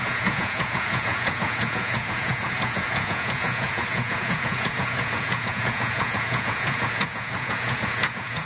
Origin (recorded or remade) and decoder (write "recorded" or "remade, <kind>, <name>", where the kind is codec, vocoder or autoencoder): remade, vocoder, Vocos